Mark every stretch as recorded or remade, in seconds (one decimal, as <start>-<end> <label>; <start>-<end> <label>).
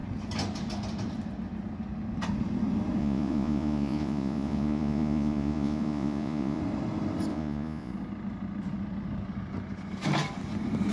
0.0-3.0 recorded; 3.0-6.6 remade; 6.6-7.3 recorded; 7.3-7.9 remade; 7.9-10.9 recorded